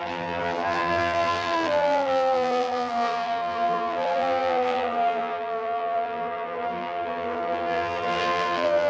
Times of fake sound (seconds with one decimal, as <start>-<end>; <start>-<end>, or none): 0.0-8.9